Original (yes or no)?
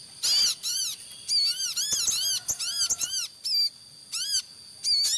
yes